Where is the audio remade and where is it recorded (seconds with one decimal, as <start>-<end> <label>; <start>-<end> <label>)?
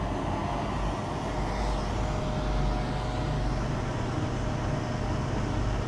0.0-5.9 recorded